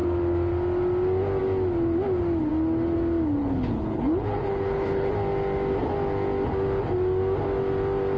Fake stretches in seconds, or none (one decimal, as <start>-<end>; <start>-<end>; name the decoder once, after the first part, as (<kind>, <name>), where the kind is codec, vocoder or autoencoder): 3.4-5.1 (codec, HILCodec)